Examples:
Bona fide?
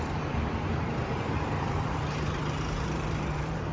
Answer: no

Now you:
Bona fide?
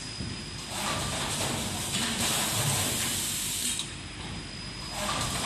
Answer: no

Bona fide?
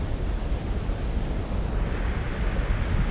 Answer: yes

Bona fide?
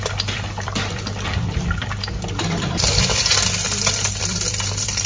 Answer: no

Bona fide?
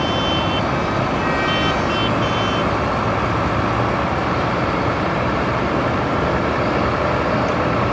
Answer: yes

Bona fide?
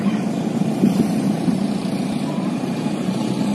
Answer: no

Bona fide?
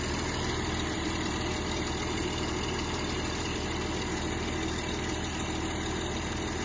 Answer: no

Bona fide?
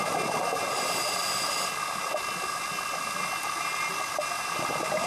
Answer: no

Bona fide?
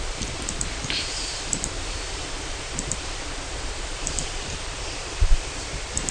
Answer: no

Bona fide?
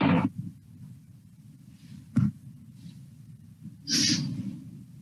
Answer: no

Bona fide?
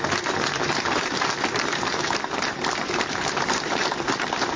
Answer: no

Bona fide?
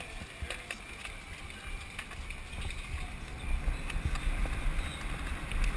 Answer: yes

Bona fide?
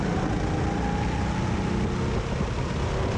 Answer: yes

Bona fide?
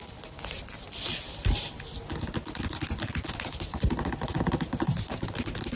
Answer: yes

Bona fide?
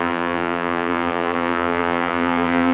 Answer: no